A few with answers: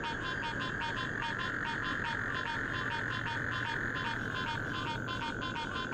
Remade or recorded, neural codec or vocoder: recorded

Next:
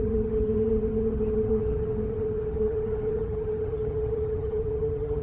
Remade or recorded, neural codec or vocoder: remade, vocoder, HiFi-GAN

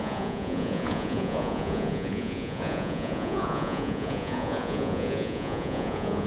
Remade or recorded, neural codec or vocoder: remade, vocoder, Vocos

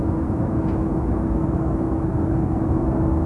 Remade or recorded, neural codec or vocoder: remade, codec, SNAC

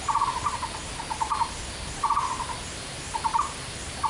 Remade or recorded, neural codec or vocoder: recorded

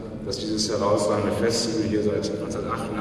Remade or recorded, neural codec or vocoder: recorded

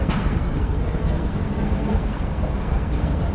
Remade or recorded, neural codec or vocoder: remade, codec, SNAC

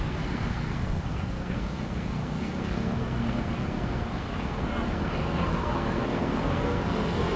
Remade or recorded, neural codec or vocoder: remade, codec, SNAC